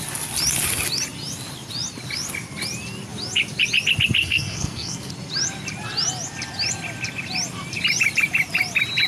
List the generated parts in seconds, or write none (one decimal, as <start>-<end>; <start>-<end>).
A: 4.2-5.1